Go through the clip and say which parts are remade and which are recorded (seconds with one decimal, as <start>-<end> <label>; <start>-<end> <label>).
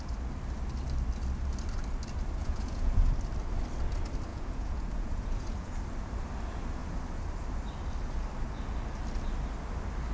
0.0-2.4 recorded; 2.4-3.1 remade; 3.1-4.3 recorded; 4.3-5.7 remade; 5.7-10.1 recorded